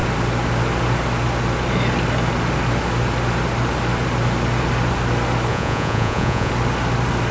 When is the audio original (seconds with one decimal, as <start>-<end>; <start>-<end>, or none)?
0.0-5.5; 6.5-7.3